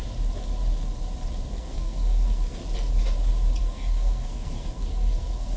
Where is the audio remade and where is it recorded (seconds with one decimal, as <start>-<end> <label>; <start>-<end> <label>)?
0.0-1.5 recorded; 1.5-2.6 remade; 2.6-3.6 recorded; 3.6-5.6 remade